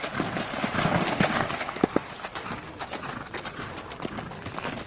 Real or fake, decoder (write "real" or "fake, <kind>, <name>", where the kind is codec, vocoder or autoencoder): real